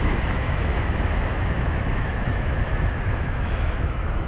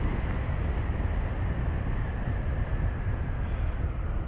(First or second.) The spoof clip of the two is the first